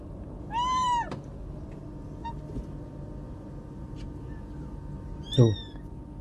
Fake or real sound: real